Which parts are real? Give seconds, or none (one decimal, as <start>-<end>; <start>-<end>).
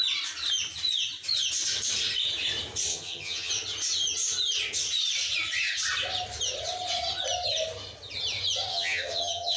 0.0-2.9; 3.5-8.7